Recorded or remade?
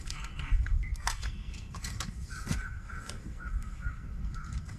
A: remade